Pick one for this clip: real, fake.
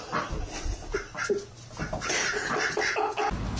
real